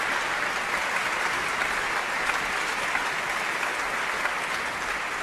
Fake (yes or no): no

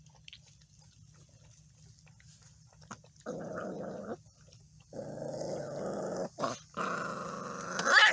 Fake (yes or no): no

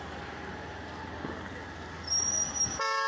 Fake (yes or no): no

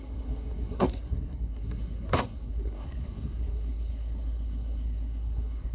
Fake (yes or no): yes